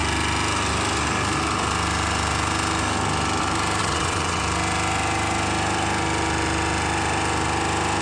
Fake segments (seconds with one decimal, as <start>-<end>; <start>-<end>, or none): 3.8-4.4